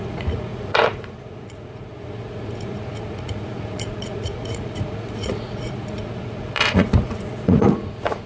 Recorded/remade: remade